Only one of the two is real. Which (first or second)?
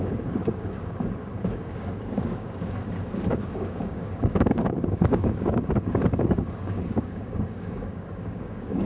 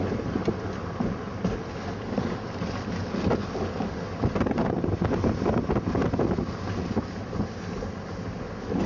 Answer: second